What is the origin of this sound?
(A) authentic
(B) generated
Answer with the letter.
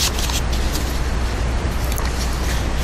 A